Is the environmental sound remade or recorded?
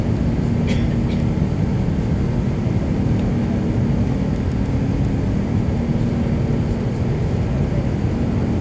recorded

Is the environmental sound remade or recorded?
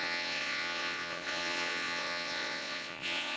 remade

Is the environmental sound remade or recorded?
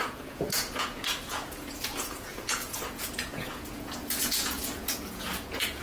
remade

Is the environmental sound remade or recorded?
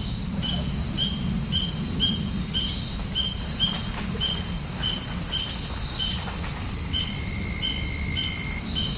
recorded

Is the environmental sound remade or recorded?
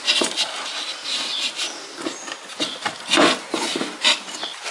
recorded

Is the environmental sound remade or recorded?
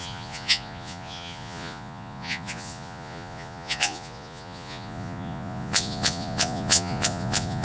remade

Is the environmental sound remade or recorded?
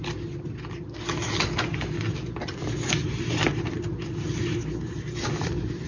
recorded